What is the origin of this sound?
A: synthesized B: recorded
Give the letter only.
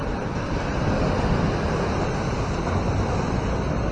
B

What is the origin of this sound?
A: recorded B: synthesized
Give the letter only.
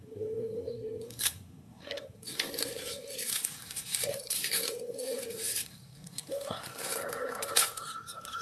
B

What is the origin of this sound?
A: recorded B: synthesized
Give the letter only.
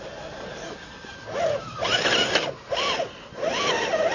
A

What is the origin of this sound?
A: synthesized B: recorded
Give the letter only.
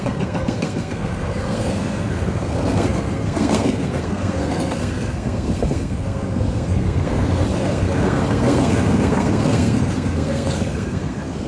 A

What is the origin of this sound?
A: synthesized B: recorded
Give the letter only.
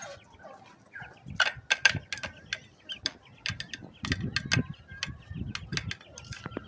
B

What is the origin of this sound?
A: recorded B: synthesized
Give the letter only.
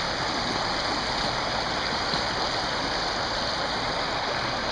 A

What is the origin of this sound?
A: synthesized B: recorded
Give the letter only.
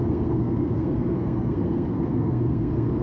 A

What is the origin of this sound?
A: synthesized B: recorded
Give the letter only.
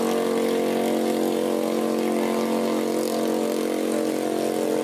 B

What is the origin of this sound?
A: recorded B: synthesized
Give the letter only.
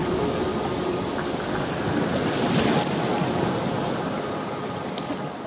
A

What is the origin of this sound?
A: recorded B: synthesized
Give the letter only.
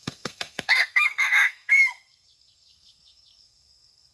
B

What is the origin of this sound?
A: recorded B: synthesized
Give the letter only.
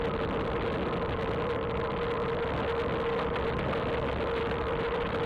A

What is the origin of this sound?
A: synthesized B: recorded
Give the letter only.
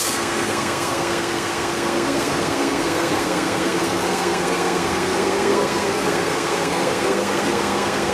A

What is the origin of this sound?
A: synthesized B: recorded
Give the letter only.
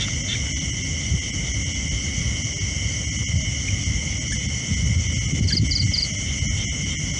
B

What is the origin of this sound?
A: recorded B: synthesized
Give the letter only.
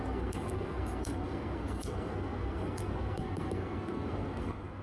B